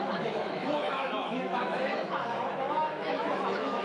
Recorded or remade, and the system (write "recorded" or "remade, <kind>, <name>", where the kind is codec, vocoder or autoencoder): remade, autoencoder, DAC-VAE